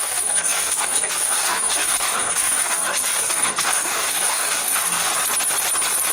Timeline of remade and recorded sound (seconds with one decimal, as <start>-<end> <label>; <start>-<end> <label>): 0.0-5.1 remade; 5.1-6.1 recorded